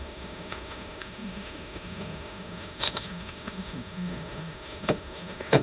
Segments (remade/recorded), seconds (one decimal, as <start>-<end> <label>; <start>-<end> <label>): 0.0-5.6 remade